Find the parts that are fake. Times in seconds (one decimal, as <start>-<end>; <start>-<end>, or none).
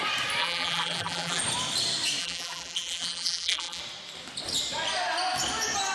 0.4-1.4; 2.2-3.8